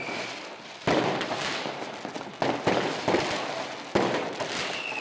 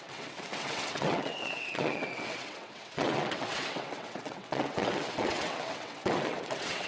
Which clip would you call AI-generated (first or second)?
second